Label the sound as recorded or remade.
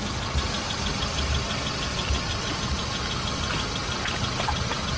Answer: recorded